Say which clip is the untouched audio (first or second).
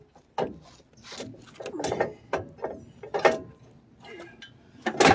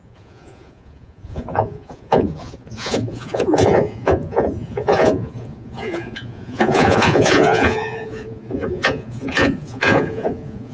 first